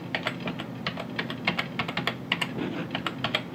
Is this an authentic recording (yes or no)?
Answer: yes